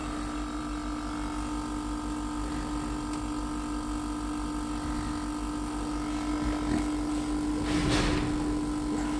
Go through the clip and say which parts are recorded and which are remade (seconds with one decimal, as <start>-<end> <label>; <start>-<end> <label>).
0.0-9.2 recorded